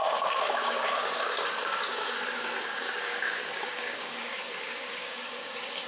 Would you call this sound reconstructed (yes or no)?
yes